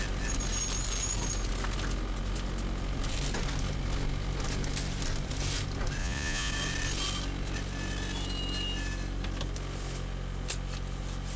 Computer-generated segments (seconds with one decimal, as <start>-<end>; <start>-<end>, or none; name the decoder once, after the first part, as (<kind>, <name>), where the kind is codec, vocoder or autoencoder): 6.0-6.5 (vocoder, Vocos)